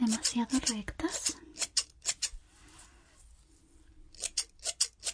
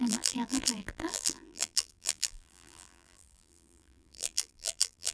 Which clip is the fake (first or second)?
second